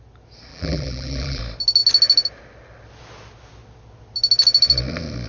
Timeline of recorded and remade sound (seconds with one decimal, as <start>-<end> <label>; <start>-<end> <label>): 0.0-0.5 recorded; 0.5-1.4 remade; 1.4-5.3 recorded